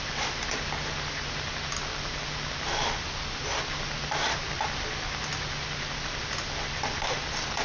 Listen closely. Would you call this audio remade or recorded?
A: recorded